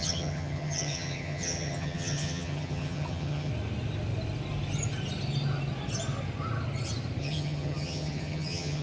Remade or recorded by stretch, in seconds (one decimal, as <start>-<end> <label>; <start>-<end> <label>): 0.0-3.5 remade; 3.5-7.2 recorded; 7.2-8.8 remade